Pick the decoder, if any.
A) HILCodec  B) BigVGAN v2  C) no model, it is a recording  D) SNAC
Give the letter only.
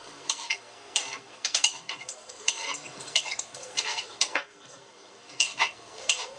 D